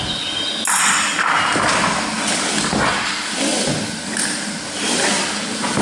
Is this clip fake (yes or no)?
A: no